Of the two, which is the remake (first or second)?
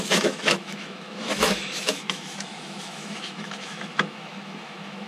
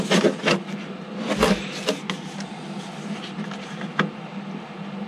first